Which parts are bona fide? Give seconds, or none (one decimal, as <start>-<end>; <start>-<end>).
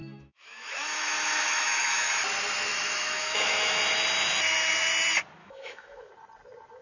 2.1-2.7; 3.8-5.4; 6.1-6.8